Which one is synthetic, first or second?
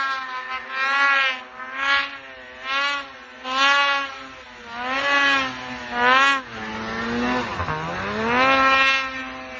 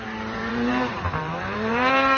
second